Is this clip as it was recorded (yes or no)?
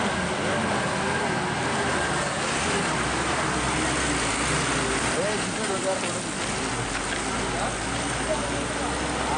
yes